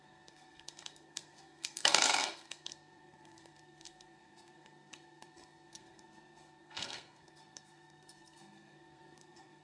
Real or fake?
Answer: fake